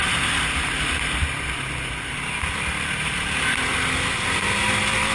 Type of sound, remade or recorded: recorded